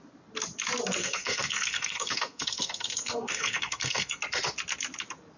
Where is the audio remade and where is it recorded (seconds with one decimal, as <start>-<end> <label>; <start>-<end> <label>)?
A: 0.0-1.0 recorded; 1.0-4.2 remade; 4.2-5.4 recorded